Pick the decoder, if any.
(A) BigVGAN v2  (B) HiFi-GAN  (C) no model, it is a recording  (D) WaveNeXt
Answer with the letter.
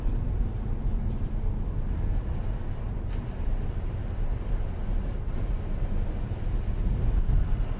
C